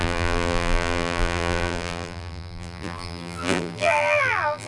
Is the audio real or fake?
fake